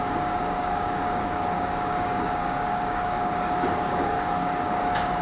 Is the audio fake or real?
fake